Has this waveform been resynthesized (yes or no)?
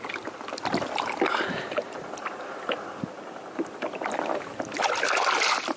no